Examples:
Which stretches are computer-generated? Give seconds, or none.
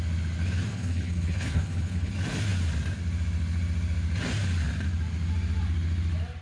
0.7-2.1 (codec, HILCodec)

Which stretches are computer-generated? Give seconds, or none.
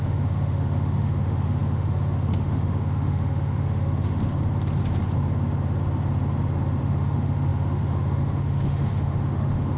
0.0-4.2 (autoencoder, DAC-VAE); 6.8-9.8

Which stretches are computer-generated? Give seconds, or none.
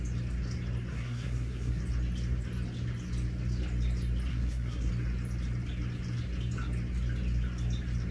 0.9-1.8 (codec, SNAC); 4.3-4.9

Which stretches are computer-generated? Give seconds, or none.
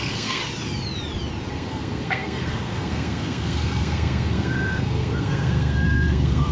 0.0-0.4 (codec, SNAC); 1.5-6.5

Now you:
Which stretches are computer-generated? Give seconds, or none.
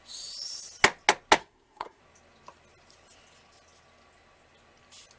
1.4-2.0 (codec, SNAC)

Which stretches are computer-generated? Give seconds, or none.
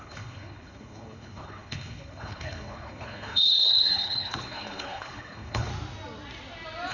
0.0-5.7 (codec, HILCodec)